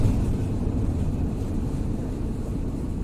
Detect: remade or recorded remade